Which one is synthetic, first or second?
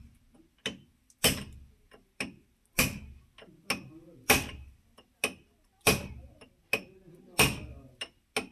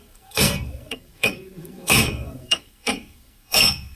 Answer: second